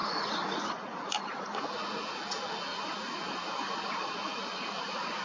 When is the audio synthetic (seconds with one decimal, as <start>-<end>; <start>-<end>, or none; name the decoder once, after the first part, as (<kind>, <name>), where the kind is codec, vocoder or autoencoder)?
0.0-2.2 (vocoder, Vocos); 2.7-5.2